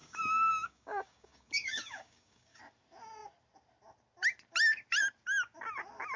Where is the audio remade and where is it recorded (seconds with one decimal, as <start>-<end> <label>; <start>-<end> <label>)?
0.0-2.6 remade; 2.6-6.2 recorded